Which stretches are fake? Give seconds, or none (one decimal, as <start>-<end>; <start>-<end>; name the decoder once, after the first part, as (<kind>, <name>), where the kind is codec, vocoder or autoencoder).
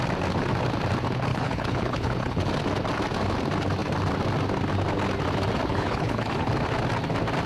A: 1.3-2.4 (codec, HILCodec); 5.7-6.5